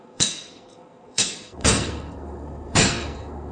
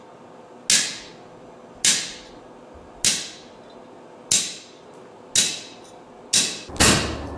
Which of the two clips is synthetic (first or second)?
first